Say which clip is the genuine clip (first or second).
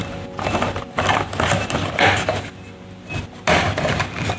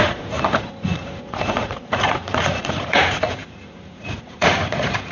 first